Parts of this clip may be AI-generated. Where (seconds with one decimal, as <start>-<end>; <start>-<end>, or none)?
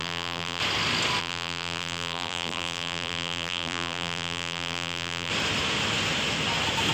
0.0-0.6; 1.2-5.3